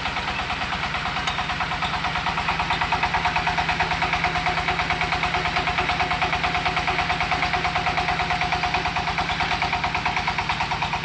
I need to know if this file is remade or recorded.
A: recorded